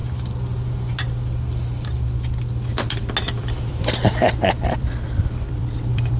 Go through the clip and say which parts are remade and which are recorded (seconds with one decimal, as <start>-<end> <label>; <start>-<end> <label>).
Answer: 0.0-3.1 recorded; 3.1-6.2 remade